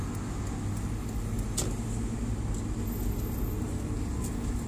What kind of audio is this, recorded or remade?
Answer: recorded